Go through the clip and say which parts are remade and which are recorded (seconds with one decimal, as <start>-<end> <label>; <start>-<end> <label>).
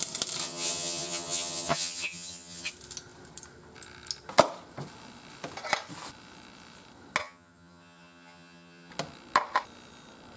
0.0-0.4 recorded; 0.4-2.7 remade; 2.7-7.2 recorded; 7.2-8.9 remade; 8.9-10.4 recorded